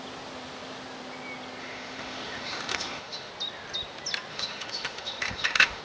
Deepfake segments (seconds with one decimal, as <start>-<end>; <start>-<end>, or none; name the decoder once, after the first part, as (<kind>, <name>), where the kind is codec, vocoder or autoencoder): 1.6-3.3 (autoencoder, DAC-VAE); 4.3-5.8